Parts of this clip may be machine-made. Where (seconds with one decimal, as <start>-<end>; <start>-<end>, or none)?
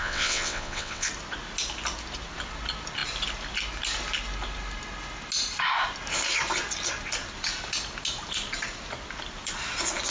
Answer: 0.0-1.1